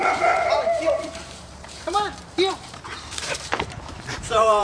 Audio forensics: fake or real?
fake